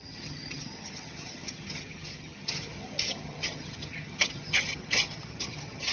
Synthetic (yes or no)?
yes